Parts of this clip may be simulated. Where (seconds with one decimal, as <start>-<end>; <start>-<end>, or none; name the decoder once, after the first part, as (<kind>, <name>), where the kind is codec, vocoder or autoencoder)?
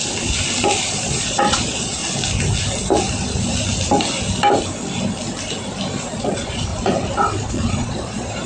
1.0-2.0 (vocoder, Vocos); 6.2-6.7; 7.5-8.5